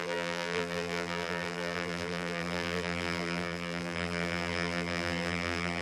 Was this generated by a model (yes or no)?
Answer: yes